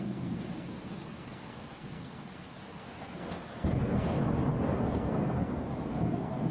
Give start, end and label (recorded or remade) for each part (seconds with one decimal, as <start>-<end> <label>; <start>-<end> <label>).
0.0-4.2 remade; 4.2-4.8 recorded; 4.8-6.5 remade

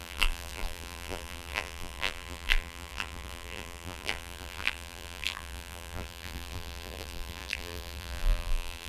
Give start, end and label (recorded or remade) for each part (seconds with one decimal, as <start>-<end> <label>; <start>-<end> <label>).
0.0-8.9 remade

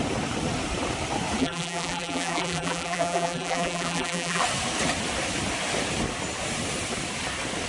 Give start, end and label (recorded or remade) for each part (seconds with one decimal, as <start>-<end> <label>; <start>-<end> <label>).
0.0-1.4 recorded; 1.4-4.4 remade; 4.4-7.7 recorded

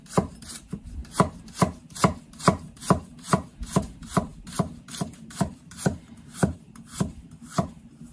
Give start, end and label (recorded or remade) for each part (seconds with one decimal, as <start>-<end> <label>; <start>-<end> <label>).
0.0-8.1 remade

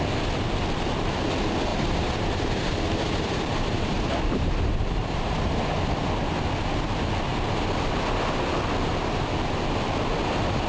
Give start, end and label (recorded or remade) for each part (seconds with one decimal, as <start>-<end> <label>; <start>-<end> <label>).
0.0-1.7 recorded; 1.7-5.8 remade; 5.8-10.7 recorded